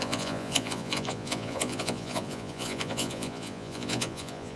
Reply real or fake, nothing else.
fake